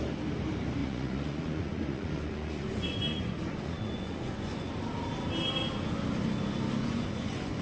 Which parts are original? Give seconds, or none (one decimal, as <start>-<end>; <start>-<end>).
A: 0.0-0.8; 4.7-6.8